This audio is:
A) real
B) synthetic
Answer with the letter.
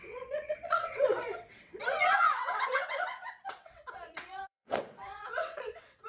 B